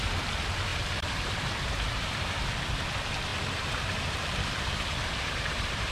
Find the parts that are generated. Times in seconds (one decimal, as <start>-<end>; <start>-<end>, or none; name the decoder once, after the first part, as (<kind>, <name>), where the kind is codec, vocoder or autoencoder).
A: 0.7-2.2 (vocoder, BigVGAN v2); 3.3-5.9